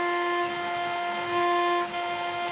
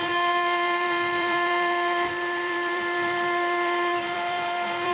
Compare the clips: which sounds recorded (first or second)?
first